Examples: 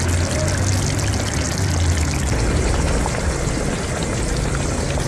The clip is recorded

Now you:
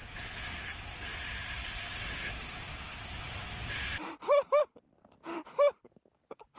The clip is recorded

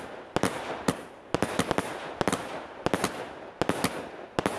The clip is recorded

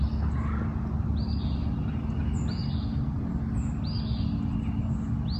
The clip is recorded